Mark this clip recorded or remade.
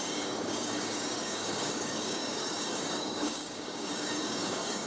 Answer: remade